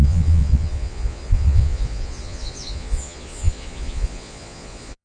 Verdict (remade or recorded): remade